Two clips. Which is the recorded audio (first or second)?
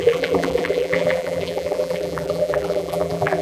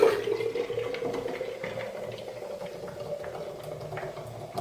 second